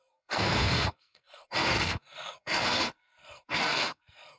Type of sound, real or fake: fake